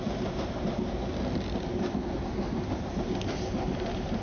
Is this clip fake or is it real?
real